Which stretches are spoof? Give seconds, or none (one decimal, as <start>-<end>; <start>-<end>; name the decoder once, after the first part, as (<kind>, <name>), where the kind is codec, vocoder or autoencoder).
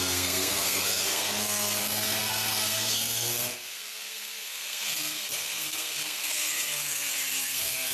0.0-7.9 (codec, SNAC)